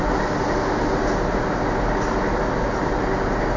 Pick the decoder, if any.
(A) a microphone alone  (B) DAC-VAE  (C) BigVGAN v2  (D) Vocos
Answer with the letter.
A